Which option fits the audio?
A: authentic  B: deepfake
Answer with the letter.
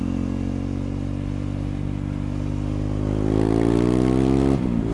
B